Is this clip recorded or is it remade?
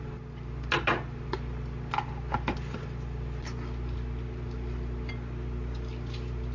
recorded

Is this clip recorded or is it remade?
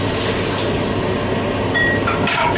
recorded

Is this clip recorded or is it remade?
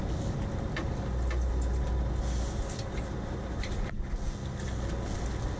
recorded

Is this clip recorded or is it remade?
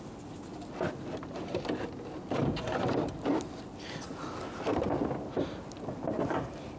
recorded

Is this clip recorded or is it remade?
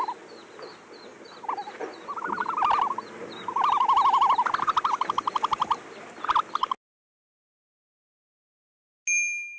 recorded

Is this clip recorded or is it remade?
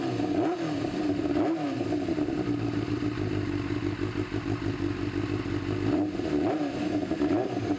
recorded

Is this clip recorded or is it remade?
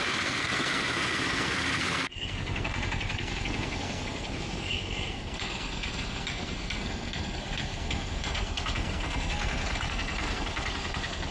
remade